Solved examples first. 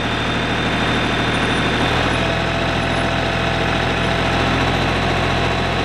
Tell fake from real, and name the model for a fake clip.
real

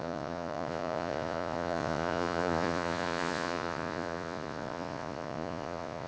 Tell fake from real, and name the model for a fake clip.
fake, vocoder, Vocos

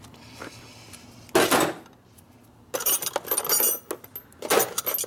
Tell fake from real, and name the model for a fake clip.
real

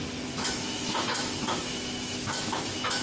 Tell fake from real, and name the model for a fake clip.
fake, autoencoder, DAC-VAE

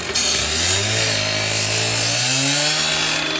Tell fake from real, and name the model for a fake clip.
real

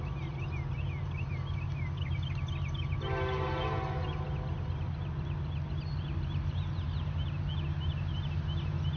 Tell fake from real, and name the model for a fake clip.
real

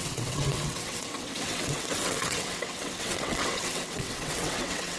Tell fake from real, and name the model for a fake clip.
fake, vocoder, WaveNeXt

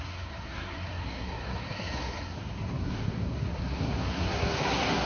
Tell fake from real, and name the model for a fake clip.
fake, codec, SNAC